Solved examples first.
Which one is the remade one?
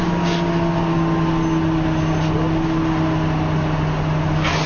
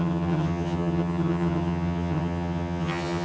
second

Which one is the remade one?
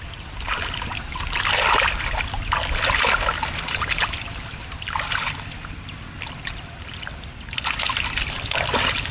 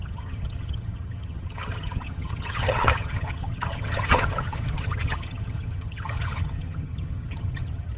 second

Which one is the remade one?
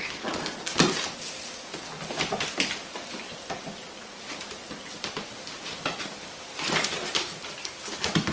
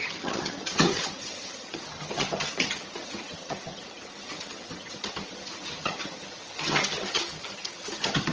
second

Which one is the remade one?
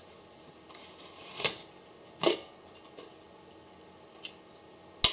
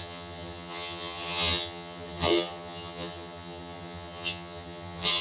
second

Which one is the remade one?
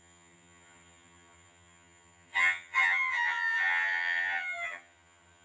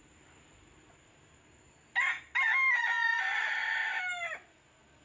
first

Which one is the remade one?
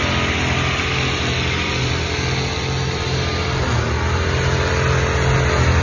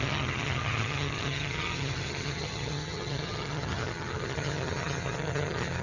second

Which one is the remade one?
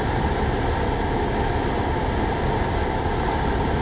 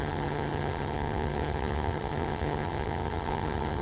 second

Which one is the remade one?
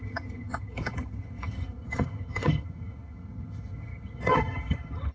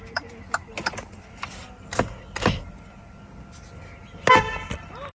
first